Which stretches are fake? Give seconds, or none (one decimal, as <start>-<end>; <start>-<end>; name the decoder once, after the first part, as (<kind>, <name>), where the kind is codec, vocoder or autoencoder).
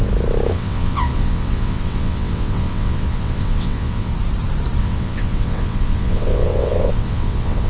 0.5-4.1 (vocoder, WaveNeXt); 4.8-7.7